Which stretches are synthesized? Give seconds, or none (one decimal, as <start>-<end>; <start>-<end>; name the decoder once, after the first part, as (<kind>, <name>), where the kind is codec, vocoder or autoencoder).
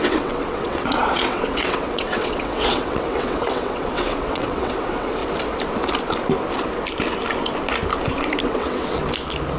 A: 0.0-5.2 (vocoder, WaveNeXt); 8.4-9.0